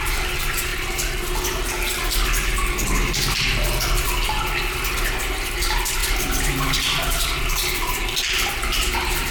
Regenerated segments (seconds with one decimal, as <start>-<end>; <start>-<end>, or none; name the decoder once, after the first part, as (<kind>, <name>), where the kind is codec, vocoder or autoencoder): none